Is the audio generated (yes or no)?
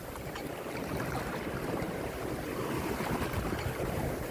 no